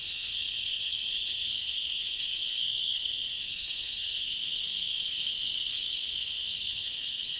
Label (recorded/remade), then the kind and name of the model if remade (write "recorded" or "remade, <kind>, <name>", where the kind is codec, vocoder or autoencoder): remade, codec, SNAC